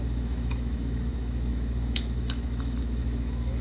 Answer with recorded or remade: remade